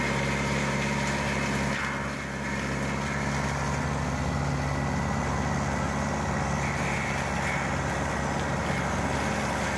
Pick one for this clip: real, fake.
real